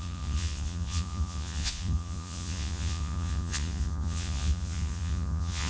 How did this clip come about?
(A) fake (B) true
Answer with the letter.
A